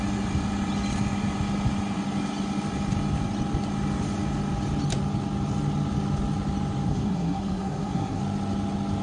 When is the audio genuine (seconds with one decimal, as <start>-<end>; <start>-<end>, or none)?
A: 0.0-6.9; 8.2-9.0